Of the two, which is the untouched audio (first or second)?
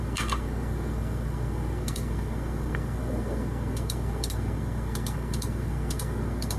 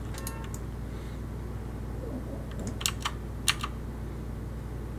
second